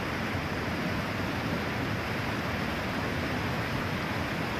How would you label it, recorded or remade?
recorded